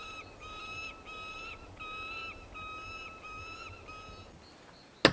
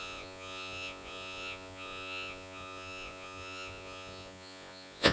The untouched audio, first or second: first